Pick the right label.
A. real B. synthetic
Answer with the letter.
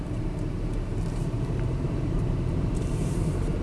B